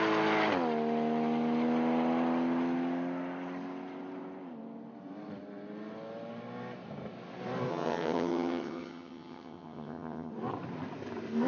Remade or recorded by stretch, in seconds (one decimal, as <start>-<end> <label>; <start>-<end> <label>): 0.0-7.7 recorded; 7.7-10.3 remade; 10.3-11.5 recorded